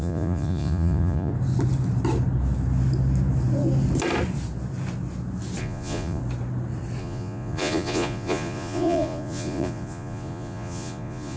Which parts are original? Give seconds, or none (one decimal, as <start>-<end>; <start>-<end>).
1.3-5.6; 6.2-7.0